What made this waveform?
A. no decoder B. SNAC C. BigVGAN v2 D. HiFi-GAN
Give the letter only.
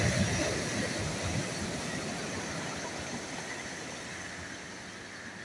A